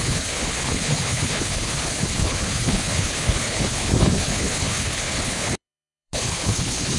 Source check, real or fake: fake